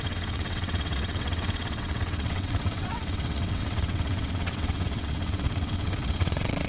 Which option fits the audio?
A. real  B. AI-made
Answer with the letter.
B